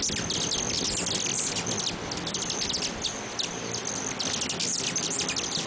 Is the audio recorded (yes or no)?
yes